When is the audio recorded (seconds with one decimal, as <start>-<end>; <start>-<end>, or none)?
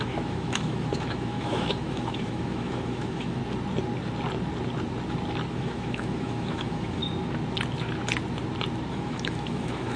3.4-5.5; 7.0-8.9